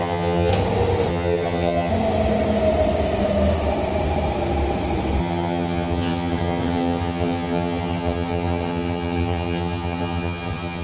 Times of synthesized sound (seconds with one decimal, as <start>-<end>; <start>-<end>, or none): 0.0-0.5; 1.1-1.9; 5.2-10.8